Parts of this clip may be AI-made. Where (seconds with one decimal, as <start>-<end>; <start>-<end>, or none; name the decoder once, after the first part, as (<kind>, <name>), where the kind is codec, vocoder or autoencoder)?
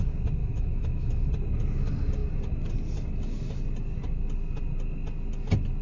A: 0.4-1.3 (autoencoder, DAC-VAE)